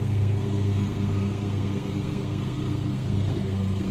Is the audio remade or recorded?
remade